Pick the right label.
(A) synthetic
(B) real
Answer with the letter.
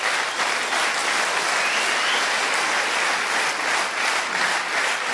B